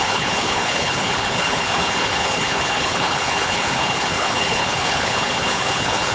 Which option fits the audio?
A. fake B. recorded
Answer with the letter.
A